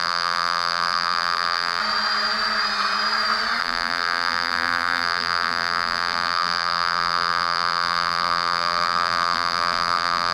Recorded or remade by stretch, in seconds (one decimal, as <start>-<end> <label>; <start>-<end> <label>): 0.0-1.8 remade; 1.8-3.6 recorded; 3.6-10.3 remade